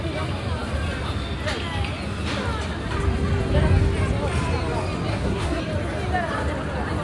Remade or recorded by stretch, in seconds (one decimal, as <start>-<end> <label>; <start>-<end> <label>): 0.0-5.1 recorded; 5.1-5.6 remade; 5.6-7.0 recorded